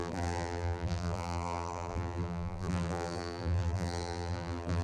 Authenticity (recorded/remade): remade